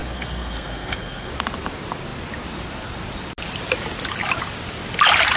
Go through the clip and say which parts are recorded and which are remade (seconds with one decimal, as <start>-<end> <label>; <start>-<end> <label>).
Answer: 0.0-1.3 remade; 1.3-5.4 recorded